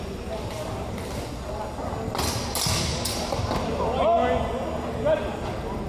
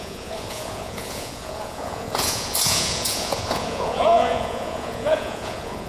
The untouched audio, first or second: first